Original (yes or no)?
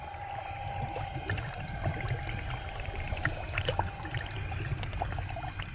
yes